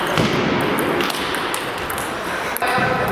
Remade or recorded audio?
recorded